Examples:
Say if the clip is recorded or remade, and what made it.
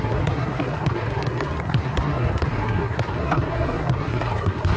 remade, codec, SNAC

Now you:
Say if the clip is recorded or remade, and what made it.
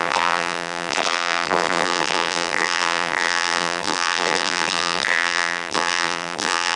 remade, vocoder, BigVGAN v2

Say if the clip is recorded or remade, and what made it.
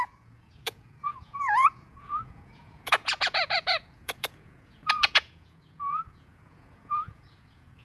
remade, vocoder, Vocos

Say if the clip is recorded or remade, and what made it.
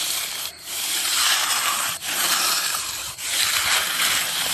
remade, vocoder, BigVGAN v2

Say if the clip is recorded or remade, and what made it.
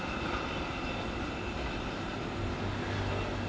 recorded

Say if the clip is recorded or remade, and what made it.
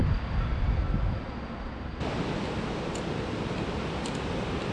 recorded